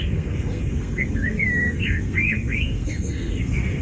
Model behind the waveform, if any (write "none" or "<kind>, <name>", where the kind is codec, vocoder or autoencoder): codec, SNAC